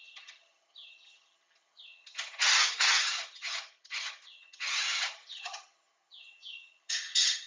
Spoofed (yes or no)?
yes